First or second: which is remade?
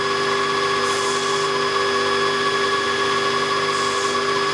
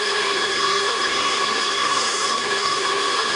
second